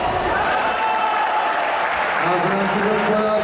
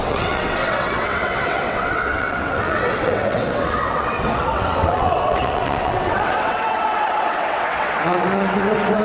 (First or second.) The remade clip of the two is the second